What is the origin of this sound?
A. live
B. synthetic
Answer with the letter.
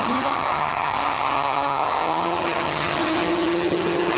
B